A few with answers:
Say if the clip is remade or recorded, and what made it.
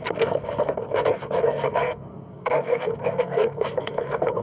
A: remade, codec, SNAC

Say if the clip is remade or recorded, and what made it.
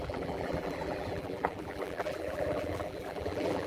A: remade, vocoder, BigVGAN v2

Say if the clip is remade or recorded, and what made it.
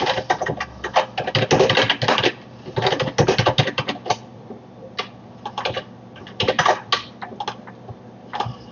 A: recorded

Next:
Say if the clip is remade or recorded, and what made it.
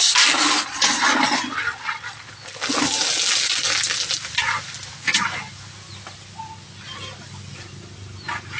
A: recorded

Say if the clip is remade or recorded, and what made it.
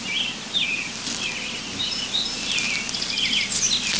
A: recorded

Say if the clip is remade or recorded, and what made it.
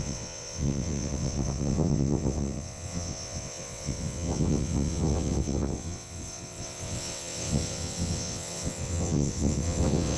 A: remade, vocoder, WaveNeXt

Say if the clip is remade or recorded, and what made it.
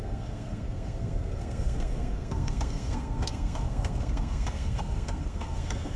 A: remade, codec, SNAC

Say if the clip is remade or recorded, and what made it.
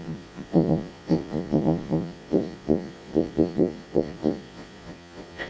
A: remade, vocoder, Vocos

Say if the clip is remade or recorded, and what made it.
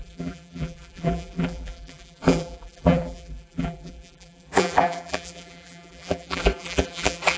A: remade, vocoder, BigVGAN v2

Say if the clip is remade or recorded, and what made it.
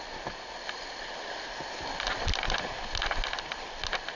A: recorded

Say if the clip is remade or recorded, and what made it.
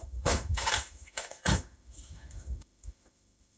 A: remade, autoencoder, DAC-VAE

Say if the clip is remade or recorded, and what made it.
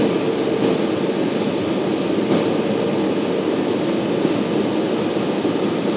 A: recorded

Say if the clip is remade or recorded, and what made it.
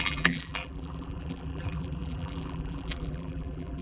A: remade, vocoder, BigVGAN v2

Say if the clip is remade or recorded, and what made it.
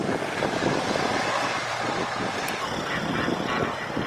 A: recorded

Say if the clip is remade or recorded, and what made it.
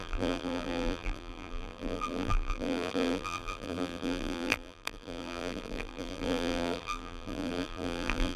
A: remade, vocoder, BigVGAN v2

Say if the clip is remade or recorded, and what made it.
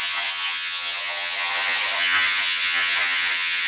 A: remade, vocoder, HiFi-GAN